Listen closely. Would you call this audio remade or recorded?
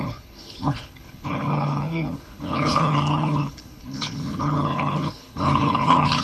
remade